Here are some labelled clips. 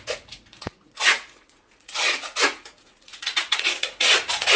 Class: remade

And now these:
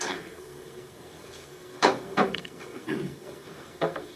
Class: remade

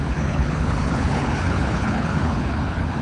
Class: remade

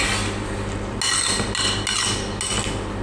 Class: recorded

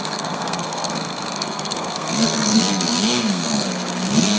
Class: remade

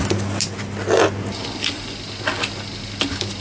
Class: recorded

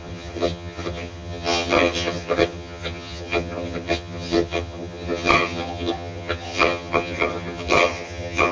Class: remade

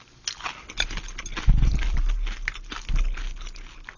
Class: recorded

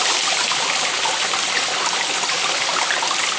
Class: recorded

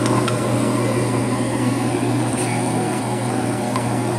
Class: remade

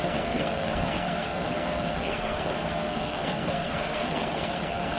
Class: remade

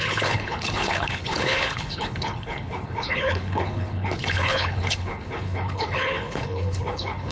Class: remade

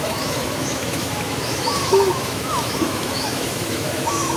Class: remade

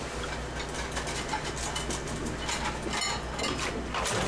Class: recorded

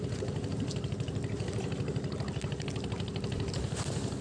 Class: recorded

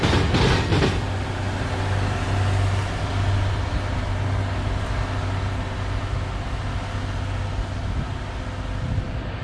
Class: recorded